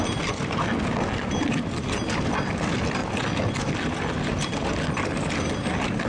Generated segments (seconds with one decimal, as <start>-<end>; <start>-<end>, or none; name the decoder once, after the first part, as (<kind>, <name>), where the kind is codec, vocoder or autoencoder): none

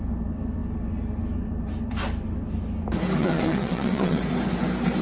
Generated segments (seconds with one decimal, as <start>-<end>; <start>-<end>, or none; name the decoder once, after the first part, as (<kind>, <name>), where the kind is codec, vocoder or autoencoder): 3.2-4.2 (vocoder, WaveNeXt)

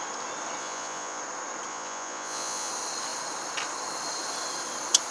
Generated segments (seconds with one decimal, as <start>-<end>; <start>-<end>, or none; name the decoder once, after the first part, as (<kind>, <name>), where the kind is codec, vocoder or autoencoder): 0.6-1.2 (vocoder, Vocos); 1.7-2.7

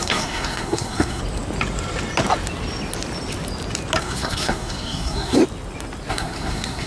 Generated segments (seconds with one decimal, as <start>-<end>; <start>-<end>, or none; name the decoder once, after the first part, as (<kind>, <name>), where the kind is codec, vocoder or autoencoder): 0.0-1.2 (codec, SNAC); 4.0-5.4; 6.1-6.9

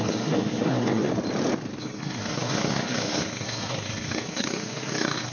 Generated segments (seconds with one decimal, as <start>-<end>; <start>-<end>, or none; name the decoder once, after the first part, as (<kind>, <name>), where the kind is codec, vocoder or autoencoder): 0.0-1.1 (codec, SNAC); 1.8-5.3

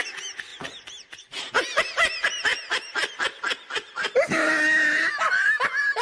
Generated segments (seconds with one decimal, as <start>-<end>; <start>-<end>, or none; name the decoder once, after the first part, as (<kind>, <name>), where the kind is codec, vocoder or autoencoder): none

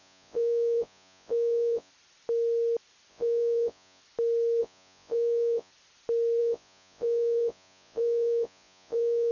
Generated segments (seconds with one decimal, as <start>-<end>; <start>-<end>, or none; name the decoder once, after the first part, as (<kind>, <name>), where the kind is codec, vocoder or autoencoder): 0.0-1.9 (vocoder, Vocos); 3.1-4.0; 4.6-5.7; 6.4-9.3